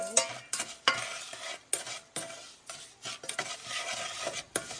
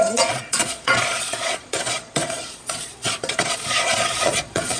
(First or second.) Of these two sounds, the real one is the first